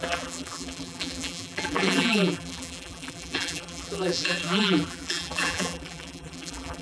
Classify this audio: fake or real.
fake